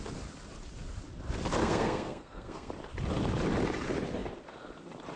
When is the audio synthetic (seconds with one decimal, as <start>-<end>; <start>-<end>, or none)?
1.6-2.7